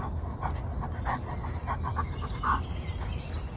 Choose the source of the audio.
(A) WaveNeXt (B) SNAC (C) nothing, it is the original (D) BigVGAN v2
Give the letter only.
C